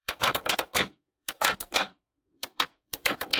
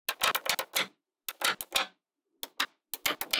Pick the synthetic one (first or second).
first